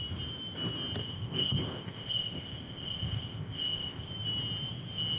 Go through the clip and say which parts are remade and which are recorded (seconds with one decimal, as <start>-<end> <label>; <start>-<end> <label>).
0.0-1.0 recorded; 1.0-4.1 remade; 4.1-5.2 recorded